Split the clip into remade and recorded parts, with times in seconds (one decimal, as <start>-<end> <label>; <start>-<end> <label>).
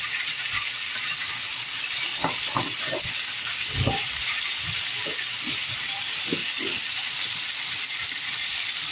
0.0-6.4 remade; 6.4-7.0 recorded; 7.0-8.9 remade